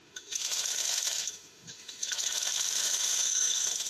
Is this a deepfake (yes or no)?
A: yes